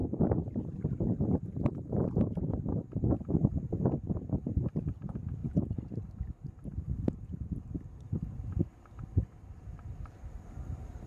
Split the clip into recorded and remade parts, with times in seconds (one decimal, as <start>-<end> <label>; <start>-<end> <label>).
0.0-0.6 recorded; 0.6-11.1 remade

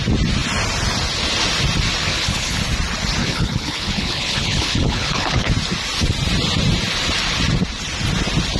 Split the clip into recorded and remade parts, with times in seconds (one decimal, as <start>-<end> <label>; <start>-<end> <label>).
0.0-2.1 recorded; 2.1-2.6 remade; 2.6-3.2 recorded; 3.2-5.5 remade; 5.5-8.6 recorded

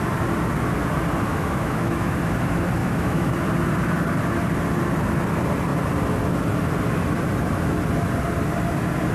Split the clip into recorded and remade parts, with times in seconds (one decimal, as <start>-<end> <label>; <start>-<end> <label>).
0.0-1.3 recorded; 1.3-2.2 remade; 2.2-2.8 recorded; 2.8-3.3 remade; 3.3-9.1 recorded